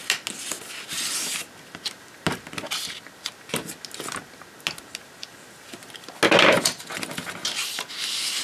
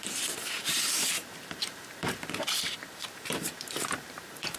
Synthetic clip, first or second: second